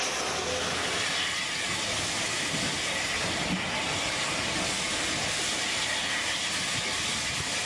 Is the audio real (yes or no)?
yes